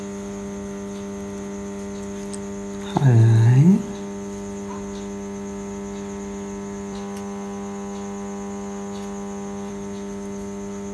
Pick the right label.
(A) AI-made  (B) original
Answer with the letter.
B